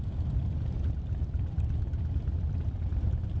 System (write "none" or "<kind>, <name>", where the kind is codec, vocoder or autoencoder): vocoder, BigVGAN v2